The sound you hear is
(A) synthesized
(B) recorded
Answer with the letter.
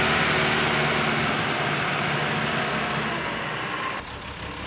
B